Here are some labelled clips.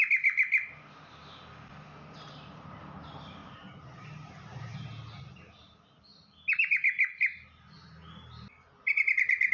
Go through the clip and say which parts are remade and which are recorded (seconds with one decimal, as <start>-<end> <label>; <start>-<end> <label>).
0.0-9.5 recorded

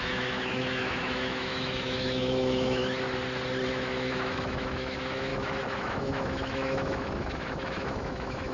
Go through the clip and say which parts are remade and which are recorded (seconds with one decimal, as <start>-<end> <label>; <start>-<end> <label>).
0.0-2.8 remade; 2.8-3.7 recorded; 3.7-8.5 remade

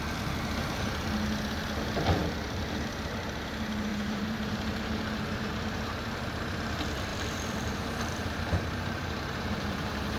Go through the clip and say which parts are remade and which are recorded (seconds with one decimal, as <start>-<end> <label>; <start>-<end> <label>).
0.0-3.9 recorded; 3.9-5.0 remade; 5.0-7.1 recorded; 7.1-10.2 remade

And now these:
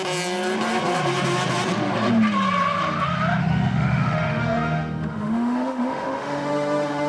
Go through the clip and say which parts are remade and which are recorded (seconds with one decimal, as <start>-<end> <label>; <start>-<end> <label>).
0.0-3.4 recorded; 3.4-7.1 remade

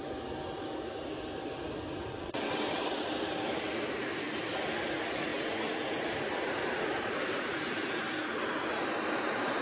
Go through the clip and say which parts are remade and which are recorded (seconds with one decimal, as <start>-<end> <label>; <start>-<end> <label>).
0.0-2.1 recorded; 2.1-3.1 remade; 3.1-9.6 recorded